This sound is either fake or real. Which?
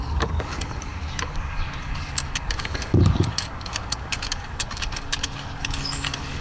fake